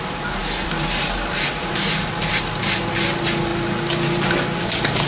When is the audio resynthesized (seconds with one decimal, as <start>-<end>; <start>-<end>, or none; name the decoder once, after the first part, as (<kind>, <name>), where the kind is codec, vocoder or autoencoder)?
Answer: none